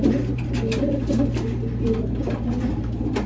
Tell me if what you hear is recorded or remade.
recorded